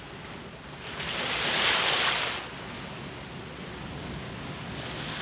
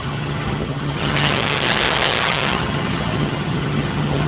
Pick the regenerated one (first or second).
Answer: second